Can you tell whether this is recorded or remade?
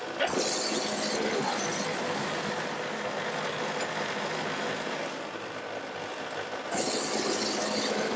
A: recorded